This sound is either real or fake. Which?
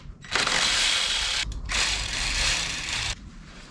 fake